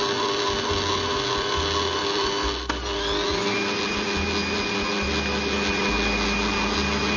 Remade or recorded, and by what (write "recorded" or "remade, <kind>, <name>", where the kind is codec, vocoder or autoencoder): recorded